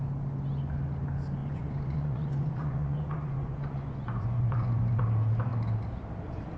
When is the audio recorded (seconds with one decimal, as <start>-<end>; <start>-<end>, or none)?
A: 0.0-1.4; 5.0-6.6